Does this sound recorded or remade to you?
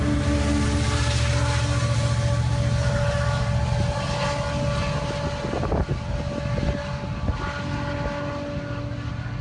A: recorded